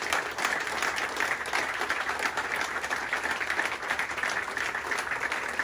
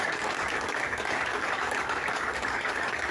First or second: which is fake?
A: second